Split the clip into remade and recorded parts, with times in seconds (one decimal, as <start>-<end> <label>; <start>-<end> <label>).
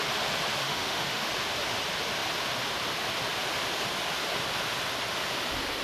0.0-0.6 recorded; 0.6-1.3 remade; 1.3-5.8 recorded